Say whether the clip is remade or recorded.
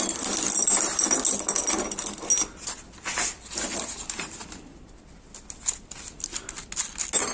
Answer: recorded